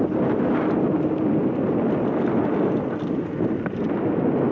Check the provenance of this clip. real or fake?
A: real